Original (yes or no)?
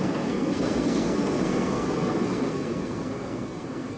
no